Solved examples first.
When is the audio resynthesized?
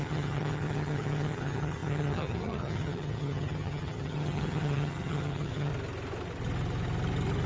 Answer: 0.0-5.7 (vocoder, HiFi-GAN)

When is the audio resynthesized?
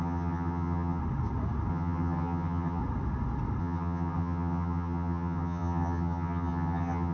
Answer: 0.0-1.0 (vocoder, HiFi-GAN); 1.7-2.8; 3.6-7.1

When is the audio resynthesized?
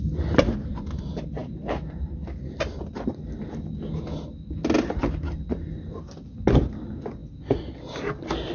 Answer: none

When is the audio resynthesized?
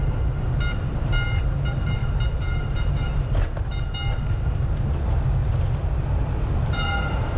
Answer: none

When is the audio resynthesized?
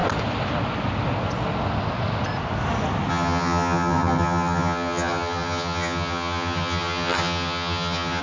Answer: 3.1-8.2 (vocoder, HiFi-GAN)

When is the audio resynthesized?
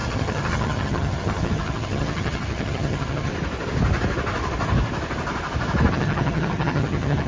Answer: 0.0-3.3 (vocoder, HiFi-GAN); 5.9-7.3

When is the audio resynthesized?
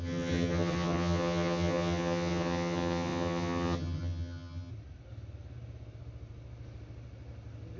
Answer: 0.0-4.7 (vocoder, HiFi-GAN)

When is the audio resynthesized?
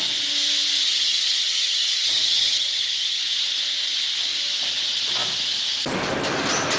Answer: 0.8-3.2 (vocoder, HiFi-GAN)